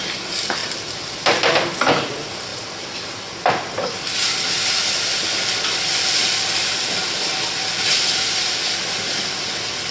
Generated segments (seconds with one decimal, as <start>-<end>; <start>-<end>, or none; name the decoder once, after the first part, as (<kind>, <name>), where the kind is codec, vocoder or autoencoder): none